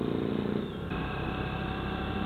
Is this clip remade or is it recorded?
recorded